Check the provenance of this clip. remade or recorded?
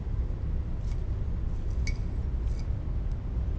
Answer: recorded